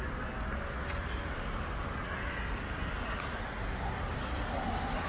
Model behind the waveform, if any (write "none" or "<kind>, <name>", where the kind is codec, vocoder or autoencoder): none